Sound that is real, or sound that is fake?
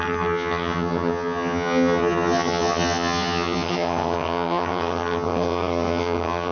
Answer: fake